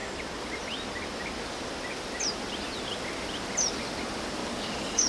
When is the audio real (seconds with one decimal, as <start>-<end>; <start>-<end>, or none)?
0.0-4.4